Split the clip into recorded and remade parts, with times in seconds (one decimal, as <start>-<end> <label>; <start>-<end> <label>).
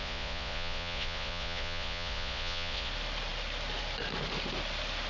0.0-2.9 remade; 2.9-5.1 recorded